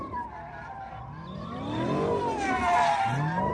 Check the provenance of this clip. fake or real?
real